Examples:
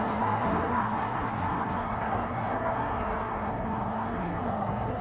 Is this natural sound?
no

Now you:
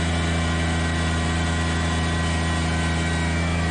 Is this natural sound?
yes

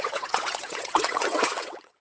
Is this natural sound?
no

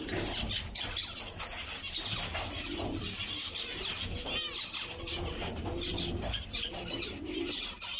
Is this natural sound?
yes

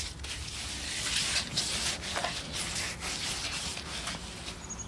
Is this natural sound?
yes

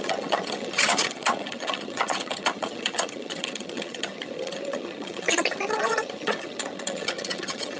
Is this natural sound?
no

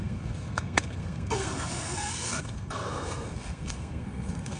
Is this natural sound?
no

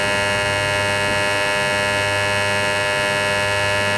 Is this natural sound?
yes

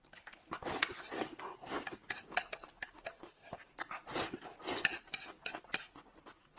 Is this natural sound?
yes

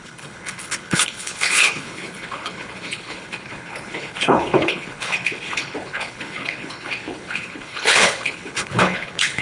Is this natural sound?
no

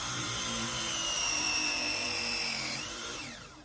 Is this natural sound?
no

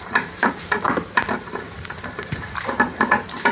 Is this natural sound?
no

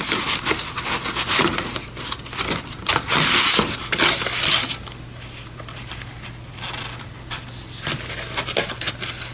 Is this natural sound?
yes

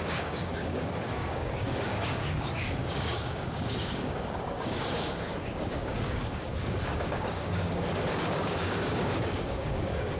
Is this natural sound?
no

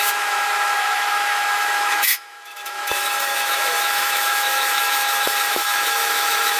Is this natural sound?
no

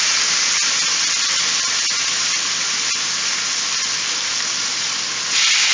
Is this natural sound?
yes